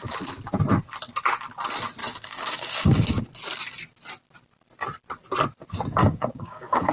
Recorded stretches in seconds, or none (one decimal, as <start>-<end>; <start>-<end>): 0.0-2.0; 3.2-6.0